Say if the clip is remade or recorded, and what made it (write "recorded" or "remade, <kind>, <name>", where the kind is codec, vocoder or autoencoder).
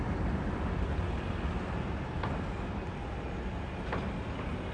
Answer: recorded